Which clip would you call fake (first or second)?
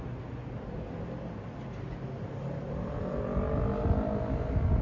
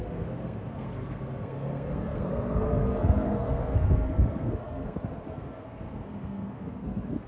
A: second